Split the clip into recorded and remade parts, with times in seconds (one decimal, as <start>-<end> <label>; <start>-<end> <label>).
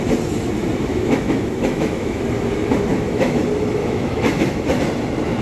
0.0-0.9 recorded; 0.9-2.2 remade; 2.2-2.9 recorded; 2.9-3.4 remade; 3.4-3.8 recorded; 3.8-4.8 remade; 4.8-5.4 recorded